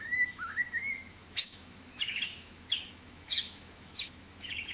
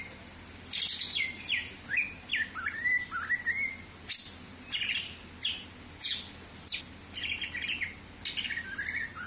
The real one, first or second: second